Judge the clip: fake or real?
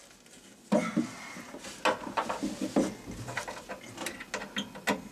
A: real